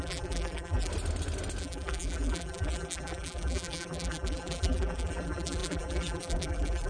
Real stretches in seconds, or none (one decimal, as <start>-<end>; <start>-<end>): 0.9-1.6